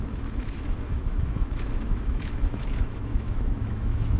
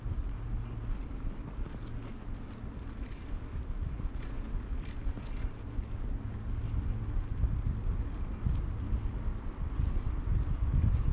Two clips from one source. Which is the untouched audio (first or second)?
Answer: second